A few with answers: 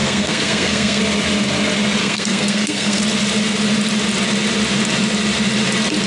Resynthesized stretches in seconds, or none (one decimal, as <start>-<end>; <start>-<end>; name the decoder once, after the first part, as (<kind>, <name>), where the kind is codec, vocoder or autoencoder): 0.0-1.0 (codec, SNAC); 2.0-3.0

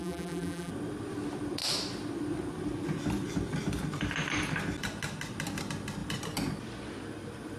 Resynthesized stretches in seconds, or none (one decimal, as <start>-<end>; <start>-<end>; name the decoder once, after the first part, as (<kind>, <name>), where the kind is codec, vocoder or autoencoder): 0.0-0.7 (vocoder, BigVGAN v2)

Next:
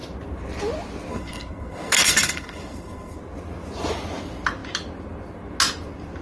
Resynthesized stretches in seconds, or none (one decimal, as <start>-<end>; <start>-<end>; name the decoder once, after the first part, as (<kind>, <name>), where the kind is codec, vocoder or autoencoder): 1.1-3.2 (codec, SNAC)

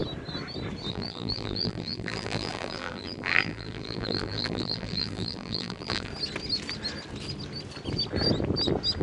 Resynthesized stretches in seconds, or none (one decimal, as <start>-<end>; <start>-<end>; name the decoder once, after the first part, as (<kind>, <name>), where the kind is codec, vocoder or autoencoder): 0.9-6.1 (vocoder, BigVGAN v2)

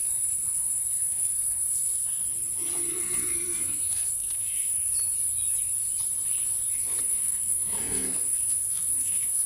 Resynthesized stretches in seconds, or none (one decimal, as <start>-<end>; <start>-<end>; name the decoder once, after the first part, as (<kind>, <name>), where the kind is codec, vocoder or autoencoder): 0.0-2.2 (codec, SNAC); 2.9-4.9; 7.0-9.5

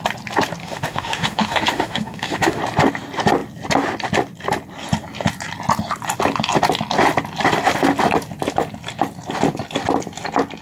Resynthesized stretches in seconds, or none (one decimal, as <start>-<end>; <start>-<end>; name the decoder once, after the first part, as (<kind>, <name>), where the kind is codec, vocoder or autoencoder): 0.6-2.6 (autoencoder, DAC-VAE)

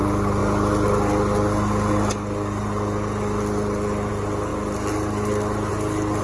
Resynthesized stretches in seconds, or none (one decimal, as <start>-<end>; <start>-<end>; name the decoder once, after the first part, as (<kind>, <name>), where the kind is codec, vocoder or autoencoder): none

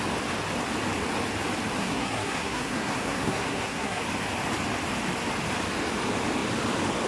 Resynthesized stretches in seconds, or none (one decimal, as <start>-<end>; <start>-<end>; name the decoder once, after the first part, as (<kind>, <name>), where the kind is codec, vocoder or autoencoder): 1.8-4.0 (codec, SNAC)